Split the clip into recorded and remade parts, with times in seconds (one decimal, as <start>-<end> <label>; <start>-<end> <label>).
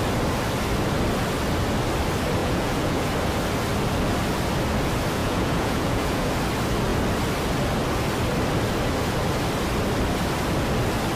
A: 0.0-2.4 recorded; 2.4-3.1 remade; 3.1-5.2 recorded; 5.2-6.3 remade; 6.3-11.2 recorded